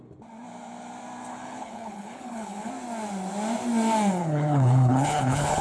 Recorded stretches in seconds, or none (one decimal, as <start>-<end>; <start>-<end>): 0.0-1.3; 2.7-4.2